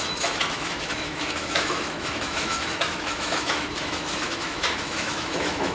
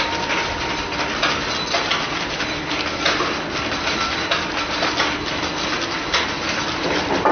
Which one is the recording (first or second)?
second